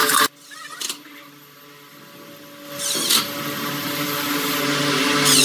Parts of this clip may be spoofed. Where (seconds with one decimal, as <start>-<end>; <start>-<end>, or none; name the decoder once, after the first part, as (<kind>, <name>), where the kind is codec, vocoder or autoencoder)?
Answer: none